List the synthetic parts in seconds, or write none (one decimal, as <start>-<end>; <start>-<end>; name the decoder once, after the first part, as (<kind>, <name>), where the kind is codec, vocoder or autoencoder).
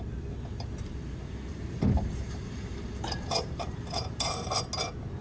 1.5-4.6 (vocoder, BigVGAN v2)